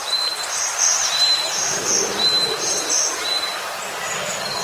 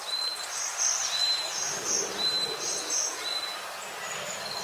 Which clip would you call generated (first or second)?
first